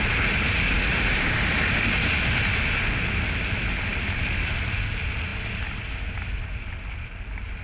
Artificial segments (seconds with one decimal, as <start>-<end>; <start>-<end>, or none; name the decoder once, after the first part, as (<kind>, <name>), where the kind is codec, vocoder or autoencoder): none